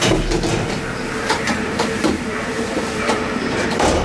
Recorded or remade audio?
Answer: remade